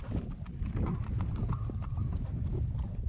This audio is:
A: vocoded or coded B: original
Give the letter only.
B